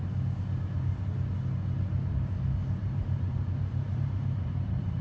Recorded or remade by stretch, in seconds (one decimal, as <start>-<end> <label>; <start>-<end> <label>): 0.0-2.8 recorded; 2.8-5.0 remade